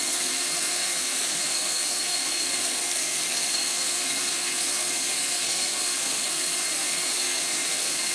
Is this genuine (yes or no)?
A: no